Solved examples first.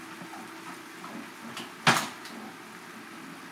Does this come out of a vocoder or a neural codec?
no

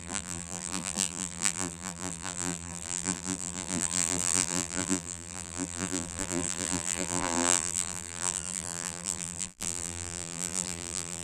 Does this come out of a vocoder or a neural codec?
yes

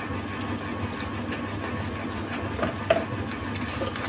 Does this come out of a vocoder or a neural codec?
no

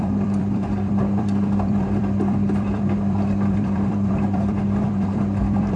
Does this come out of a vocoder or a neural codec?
yes